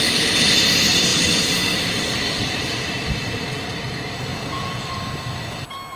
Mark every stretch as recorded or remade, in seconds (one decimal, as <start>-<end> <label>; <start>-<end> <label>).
0.0-4.3 recorded; 4.3-4.9 remade; 4.9-6.0 recorded